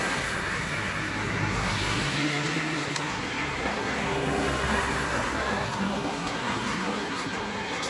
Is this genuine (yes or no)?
no